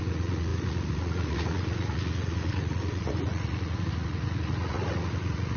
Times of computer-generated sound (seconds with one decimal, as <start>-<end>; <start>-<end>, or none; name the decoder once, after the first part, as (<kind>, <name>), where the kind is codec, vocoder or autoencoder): 0.0-5.6 (vocoder, Vocos)